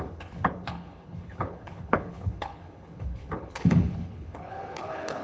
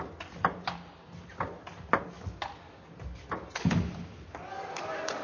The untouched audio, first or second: second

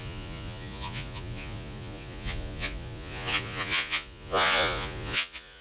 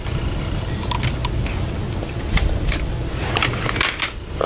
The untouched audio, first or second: second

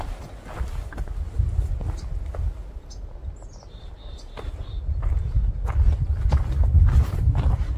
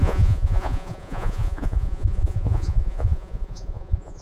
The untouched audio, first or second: first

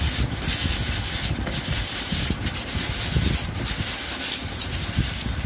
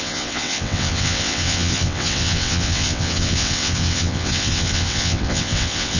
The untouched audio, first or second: first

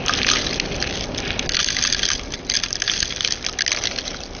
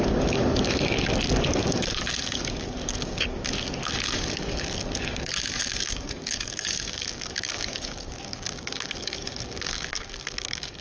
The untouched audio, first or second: first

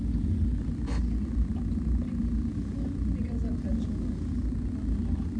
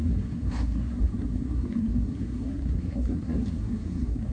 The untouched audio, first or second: first